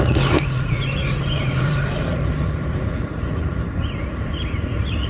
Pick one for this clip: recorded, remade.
remade